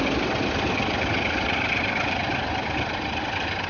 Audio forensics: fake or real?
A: real